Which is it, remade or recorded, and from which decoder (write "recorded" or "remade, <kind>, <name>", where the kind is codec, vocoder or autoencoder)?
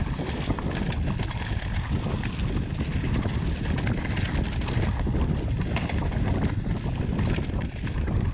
recorded